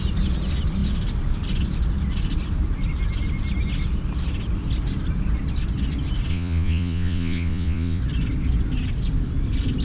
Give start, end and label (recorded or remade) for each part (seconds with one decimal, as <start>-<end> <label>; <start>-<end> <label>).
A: 0.0-6.3 recorded; 6.3-8.0 remade; 8.0-9.8 recorded

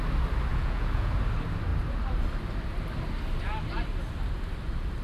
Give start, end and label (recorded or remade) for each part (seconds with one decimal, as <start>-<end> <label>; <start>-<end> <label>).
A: 0.0-0.5 recorded; 0.5-1.1 remade; 1.1-5.0 recorded

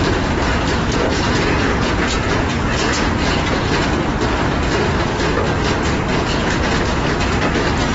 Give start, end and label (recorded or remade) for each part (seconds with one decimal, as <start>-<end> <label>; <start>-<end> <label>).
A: 0.0-1.1 recorded; 1.1-3.6 remade; 3.6-6.1 recorded; 6.1-6.8 remade; 6.8-7.9 recorded